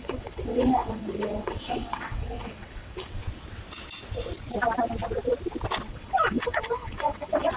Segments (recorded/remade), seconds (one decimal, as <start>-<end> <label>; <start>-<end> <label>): 0.0-3.2 remade; 3.2-5.9 recorded; 5.9-7.6 remade